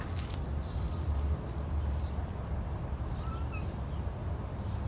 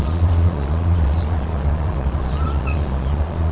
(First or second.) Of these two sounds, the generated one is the second